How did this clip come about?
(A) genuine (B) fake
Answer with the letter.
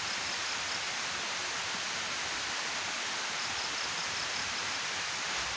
A